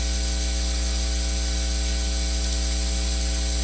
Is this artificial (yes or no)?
no